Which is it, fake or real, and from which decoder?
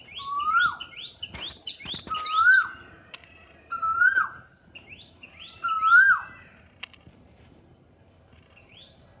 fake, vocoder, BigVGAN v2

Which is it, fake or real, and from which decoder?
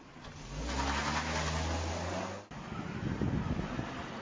real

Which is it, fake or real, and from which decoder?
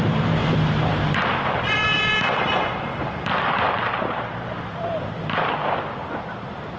fake, vocoder, BigVGAN v2